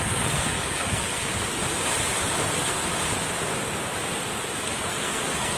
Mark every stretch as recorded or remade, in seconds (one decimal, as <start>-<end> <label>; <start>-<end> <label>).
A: 0.0-1.3 remade; 1.3-2.5 recorded; 2.5-2.9 remade; 2.9-4.8 recorded; 4.8-5.6 remade